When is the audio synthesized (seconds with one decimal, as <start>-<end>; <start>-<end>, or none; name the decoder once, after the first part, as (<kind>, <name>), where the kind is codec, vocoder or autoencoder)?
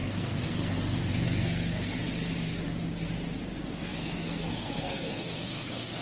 0.0-2.0 (codec, SNAC); 3.6-6.0